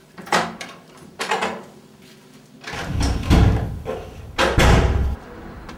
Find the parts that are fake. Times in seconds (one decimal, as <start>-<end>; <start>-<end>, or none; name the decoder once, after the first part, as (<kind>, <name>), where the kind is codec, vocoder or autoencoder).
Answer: 0.0-1.2 (vocoder, BigVGAN v2); 4.6-5.2